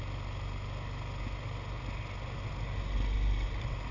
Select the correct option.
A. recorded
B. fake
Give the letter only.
A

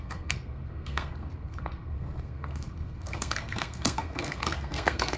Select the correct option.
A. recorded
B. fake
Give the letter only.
B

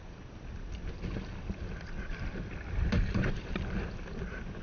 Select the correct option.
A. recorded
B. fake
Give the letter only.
A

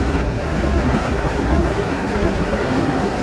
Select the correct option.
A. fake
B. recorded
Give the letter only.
A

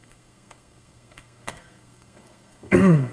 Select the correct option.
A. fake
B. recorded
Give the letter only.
A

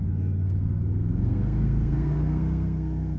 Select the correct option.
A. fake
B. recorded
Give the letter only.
A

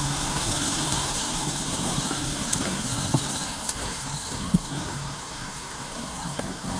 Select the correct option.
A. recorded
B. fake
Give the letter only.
B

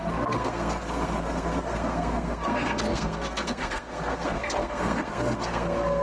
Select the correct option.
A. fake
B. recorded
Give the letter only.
A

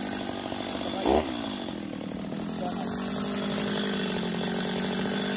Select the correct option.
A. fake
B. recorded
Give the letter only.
B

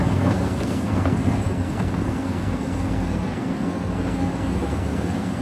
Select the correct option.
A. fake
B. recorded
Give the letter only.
A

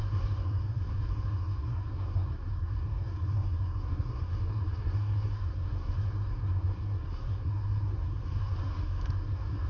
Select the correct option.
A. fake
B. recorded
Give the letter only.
A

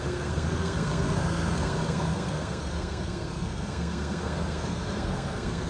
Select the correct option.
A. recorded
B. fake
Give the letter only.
B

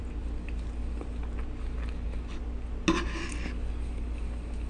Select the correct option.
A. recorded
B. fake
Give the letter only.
A